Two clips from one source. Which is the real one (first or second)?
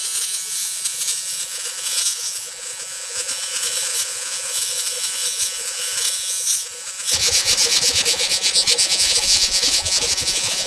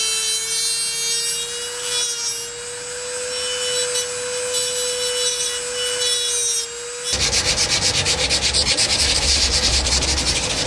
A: second